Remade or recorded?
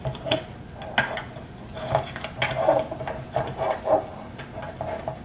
recorded